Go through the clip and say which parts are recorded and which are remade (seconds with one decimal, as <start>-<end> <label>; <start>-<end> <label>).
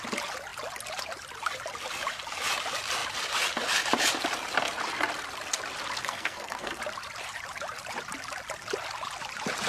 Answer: 0.0-6.0 recorded; 6.0-6.8 remade; 6.8-9.7 recorded